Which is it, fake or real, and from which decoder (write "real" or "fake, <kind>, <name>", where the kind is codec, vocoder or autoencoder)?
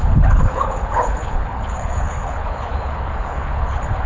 fake, codec, HILCodec